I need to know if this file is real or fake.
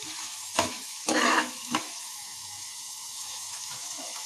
fake